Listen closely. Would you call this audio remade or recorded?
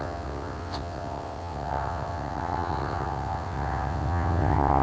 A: remade